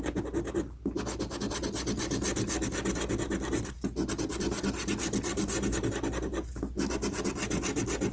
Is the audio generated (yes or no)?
no